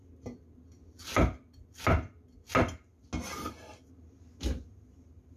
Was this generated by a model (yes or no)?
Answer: no